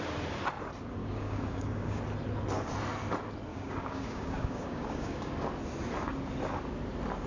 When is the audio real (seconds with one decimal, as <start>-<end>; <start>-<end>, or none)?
0.0-1.0; 2.0-3.5; 5.3-7.3